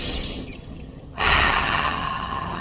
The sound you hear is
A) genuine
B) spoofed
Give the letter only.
B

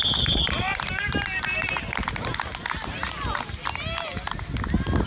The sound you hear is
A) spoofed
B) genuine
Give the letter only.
B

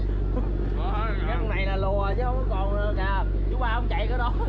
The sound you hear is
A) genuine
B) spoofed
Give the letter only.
A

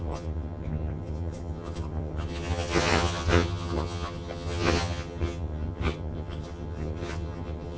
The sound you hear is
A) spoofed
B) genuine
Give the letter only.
A